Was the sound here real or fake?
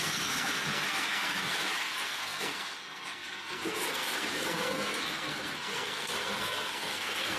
fake